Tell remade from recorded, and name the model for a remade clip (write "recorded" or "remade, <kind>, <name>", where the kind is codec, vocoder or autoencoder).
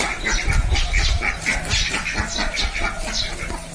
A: recorded